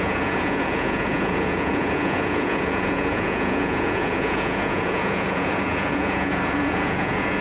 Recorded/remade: remade